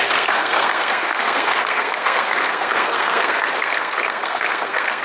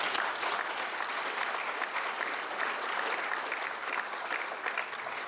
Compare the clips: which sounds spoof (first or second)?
first